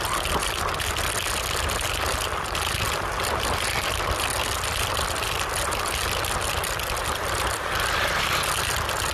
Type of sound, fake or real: real